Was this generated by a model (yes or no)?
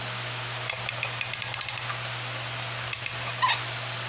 no